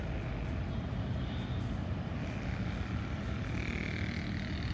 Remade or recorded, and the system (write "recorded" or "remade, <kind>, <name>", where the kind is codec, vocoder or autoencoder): recorded